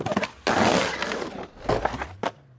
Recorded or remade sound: recorded